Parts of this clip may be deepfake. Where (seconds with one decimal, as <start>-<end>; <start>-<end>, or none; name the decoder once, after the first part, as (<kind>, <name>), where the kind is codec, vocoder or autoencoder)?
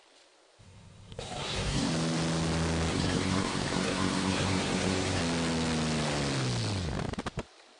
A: 0.6-1.9 (codec, SNAC); 2.9-5.2